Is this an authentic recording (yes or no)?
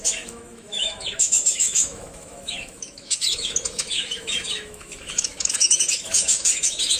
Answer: no